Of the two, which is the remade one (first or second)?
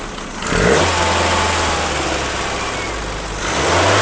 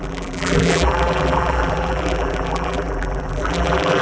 second